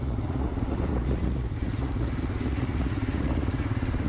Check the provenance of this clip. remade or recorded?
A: remade